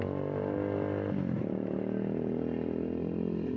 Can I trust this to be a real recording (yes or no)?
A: yes